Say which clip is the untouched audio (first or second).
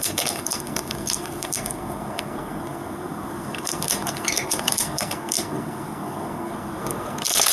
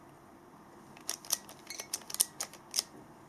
second